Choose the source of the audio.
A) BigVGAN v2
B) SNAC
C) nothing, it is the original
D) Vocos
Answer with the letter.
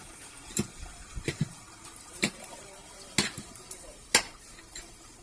A